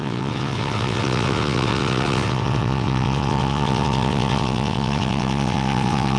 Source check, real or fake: fake